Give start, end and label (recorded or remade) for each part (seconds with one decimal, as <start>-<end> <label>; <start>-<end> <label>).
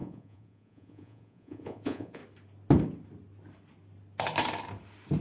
0.0-2.2 remade; 2.2-5.2 recorded